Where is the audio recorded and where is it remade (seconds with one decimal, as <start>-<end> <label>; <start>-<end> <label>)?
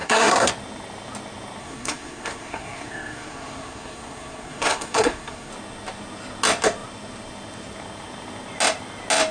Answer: 0.0-0.5 remade; 0.5-1.6 recorded; 1.6-5.5 remade; 5.5-9.3 recorded